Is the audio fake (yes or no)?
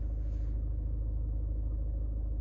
no